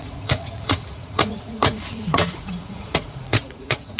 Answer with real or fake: fake